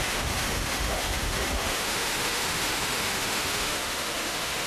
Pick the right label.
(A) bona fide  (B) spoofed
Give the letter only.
B